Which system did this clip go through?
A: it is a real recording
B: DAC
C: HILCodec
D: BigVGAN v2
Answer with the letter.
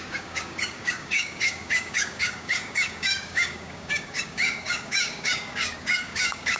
B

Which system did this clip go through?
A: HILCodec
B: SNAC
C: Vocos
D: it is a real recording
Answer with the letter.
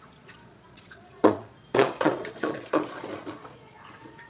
C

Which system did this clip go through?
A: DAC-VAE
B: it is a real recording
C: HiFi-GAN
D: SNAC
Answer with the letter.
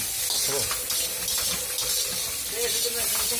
B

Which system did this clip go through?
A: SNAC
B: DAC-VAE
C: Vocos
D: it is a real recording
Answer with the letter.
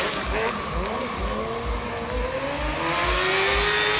D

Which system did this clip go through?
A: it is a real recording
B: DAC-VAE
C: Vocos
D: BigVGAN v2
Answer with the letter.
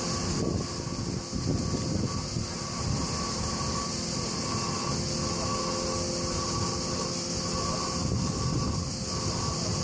A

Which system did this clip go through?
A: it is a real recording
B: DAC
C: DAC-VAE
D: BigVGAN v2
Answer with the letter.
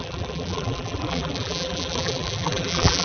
D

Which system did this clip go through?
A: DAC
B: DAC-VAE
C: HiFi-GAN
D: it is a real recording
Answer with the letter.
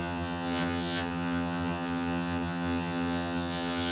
C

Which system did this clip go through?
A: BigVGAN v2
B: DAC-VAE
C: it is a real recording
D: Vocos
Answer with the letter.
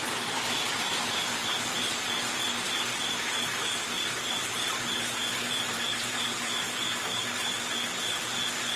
A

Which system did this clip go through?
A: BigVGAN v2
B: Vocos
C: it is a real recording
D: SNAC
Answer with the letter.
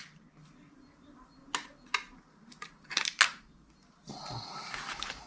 C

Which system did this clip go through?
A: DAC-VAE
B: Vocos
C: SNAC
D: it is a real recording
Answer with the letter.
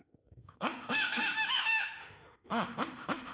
A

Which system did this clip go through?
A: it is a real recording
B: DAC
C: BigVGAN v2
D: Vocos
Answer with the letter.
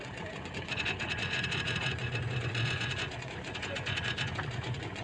D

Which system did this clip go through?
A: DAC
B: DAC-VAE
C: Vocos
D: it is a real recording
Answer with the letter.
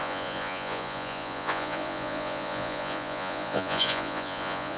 C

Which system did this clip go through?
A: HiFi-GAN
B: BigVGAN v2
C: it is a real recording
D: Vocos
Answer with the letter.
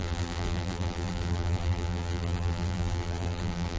B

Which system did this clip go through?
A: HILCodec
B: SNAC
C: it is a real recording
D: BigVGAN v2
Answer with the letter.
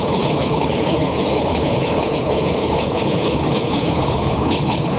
A